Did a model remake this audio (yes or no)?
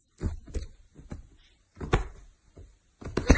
no